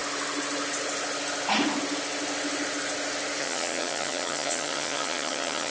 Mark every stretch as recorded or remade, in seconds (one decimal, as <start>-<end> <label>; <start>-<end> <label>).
0.0-3.4 recorded; 3.4-5.7 remade